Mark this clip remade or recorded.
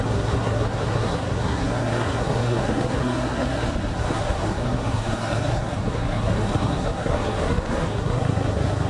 remade